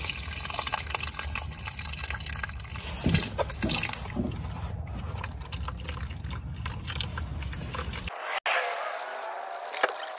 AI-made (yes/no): no